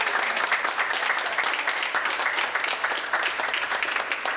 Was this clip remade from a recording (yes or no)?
no